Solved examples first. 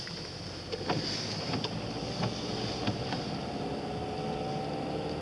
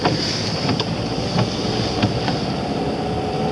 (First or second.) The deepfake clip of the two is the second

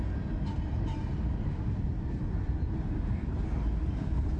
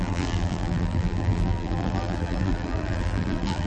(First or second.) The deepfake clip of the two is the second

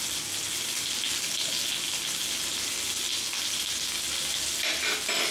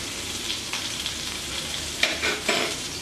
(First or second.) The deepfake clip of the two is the second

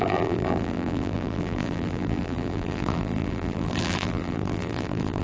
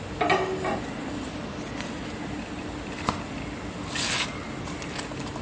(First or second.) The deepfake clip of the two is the first